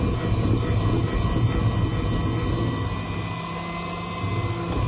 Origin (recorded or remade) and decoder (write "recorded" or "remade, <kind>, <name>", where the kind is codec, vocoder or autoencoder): recorded